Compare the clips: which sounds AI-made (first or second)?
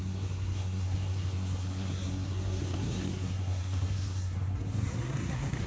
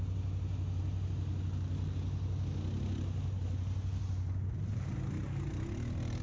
first